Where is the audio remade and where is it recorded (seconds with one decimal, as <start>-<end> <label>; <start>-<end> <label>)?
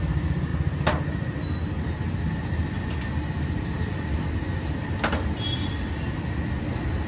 0.0-7.1 recorded